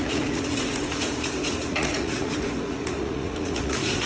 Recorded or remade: remade